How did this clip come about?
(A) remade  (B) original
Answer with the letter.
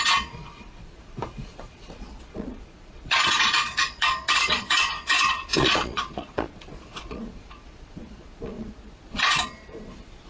A